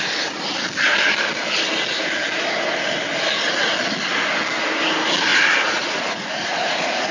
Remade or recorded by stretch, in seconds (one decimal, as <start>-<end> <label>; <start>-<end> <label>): 0.0-5.3 recorded; 5.3-7.1 remade